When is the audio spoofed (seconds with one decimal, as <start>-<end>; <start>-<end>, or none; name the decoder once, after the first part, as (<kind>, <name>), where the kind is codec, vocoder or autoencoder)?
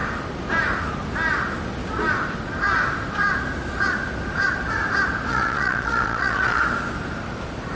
5.3-6.6 (vocoder, Vocos)